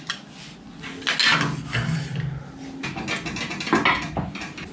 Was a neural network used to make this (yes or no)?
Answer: no